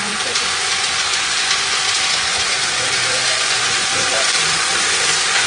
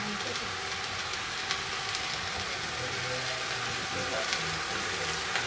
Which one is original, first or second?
second